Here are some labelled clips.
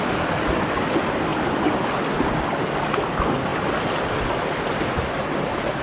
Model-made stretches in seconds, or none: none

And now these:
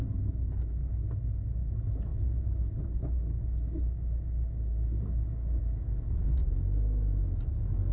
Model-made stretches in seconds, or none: none

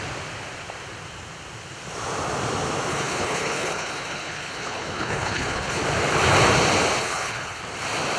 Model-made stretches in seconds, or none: 2.9-5.8 (codec, HILCodec); 7.0-7.6

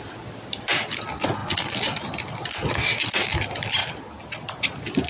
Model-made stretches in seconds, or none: none

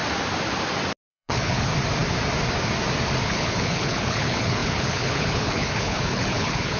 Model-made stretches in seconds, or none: 1.1-1.7 (codec, HILCodec); 3.2-6.8

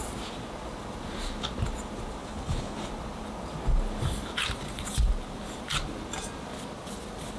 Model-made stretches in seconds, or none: 2.2-2.9 (codec, HILCodec)

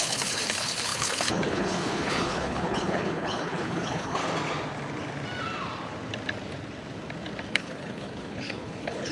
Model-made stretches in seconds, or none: 0.0-4.2 (codec, HILCodec); 7.5-9.1